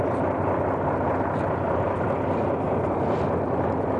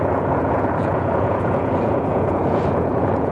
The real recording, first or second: first